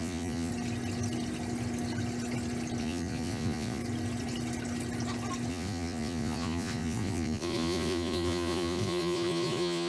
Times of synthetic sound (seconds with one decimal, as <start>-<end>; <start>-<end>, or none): 0.0-0.5; 2.8-3.8; 5.5-9.9